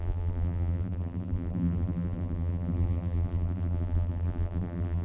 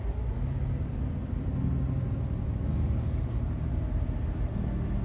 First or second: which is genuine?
second